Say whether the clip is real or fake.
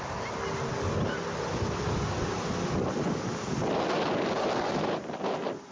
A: real